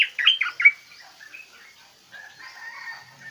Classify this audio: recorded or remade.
recorded